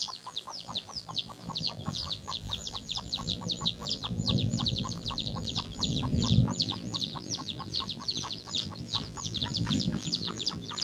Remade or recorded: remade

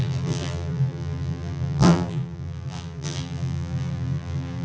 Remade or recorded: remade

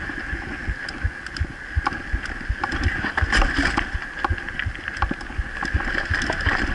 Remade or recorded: recorded